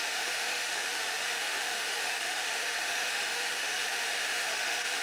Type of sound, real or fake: fake